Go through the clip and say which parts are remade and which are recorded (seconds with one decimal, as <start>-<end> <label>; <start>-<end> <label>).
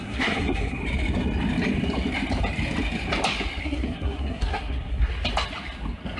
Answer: 0.0-0.8 remade; 0.8-3.6 recorded; 3.6-5.1 remade; 5.1-6.2 recorded